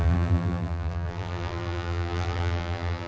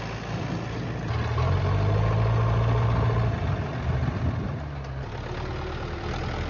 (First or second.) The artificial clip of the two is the first